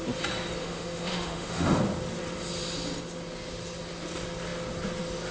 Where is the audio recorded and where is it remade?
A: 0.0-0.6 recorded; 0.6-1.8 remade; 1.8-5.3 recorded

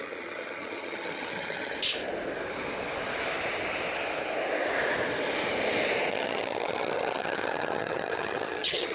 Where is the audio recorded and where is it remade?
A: 0.0-1.7 remade; 1.7-6.1 recorded; 6.1-8.9 remade

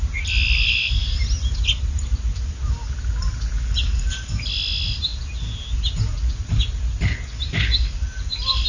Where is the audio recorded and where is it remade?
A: 0.0-8.7 recorded

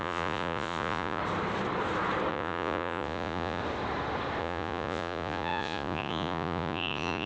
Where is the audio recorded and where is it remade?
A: 0.0-1.2 remade; 1.2-2.3 recorded; 2.3-3.6 remade; 3.6-4.4 recorded; 4.4-7.3 remade